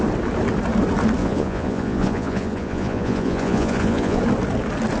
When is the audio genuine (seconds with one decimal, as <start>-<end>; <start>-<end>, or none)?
0.0-1.2; 4.2-5.0